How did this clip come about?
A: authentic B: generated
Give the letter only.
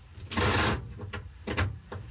B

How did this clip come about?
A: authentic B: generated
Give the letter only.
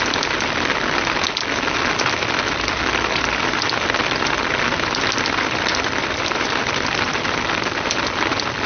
B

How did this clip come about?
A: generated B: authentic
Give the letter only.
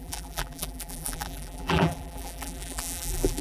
A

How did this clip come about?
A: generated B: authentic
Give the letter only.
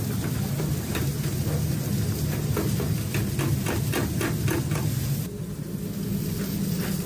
B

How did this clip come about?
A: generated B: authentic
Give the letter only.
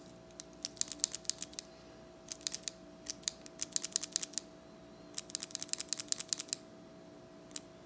B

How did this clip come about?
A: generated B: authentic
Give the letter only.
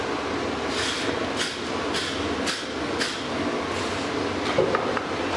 B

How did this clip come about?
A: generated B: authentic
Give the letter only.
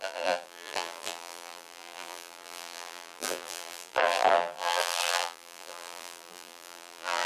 A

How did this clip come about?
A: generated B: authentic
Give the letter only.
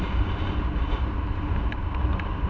A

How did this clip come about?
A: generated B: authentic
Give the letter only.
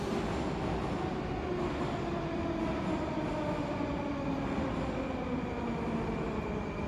B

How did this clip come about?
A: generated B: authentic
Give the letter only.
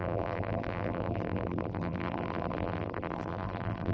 A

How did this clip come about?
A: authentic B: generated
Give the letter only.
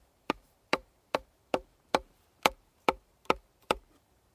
B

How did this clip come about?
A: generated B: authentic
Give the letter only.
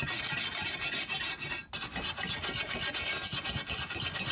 B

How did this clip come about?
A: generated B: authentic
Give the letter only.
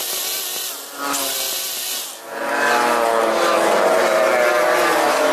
B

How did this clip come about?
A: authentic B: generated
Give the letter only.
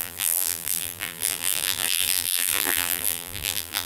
B